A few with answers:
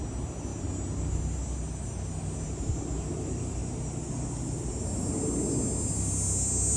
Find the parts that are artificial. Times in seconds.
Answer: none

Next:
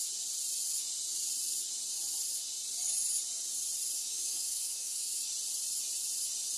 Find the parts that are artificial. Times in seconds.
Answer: 4.0-5.2 (autoencoder, DAC-VAE)

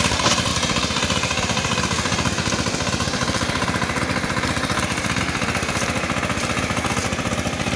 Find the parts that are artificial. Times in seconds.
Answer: 0.5-5.2 (vocoder, BigVGAN v2)

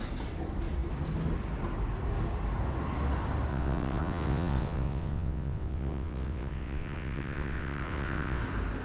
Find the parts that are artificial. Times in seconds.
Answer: 3.5-8.4 (vocoder, WaveNeXt)

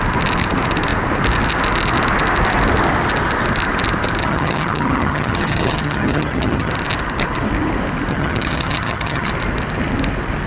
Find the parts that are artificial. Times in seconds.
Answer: 4.2-6.7 (vocoder, HiFi-GAN); 8.1-9.3

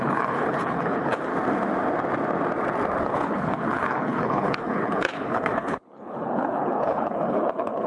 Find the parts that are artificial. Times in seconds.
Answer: 0.0-1.3 (codec, HILCodec); 3.0-7.9

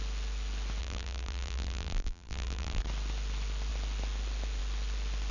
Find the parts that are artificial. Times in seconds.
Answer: 0.8-2.8 (vocoder, BigVGAN v2)